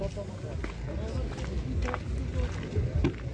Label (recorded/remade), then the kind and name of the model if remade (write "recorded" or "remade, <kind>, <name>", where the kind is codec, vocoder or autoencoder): recorded